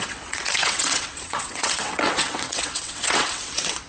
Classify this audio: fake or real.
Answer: fake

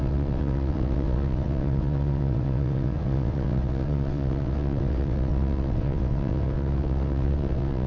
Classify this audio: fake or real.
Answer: fake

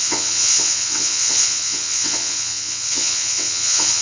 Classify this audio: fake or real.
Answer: fake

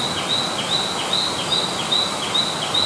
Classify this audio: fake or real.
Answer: real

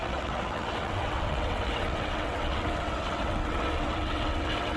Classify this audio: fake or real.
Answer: fake